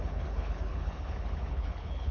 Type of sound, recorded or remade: remade